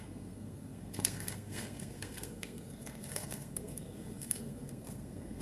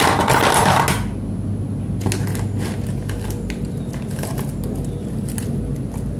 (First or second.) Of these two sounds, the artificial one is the first